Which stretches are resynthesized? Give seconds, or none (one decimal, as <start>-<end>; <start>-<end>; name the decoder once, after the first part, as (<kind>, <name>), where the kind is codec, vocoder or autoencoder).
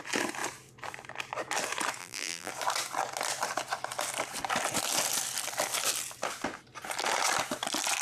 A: 2.0-2.5 (vocoder, BigVGAN v2)